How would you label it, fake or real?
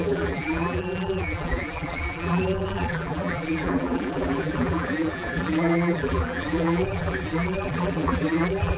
fake